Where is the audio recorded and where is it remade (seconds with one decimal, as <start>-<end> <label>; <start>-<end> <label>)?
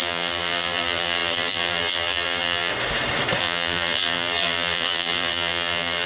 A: 0.0-2.7 remade; 2.7-3.4 recorded; 3.4-6.1 remade